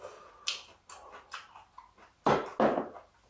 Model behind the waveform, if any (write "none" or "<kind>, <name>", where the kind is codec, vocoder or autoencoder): none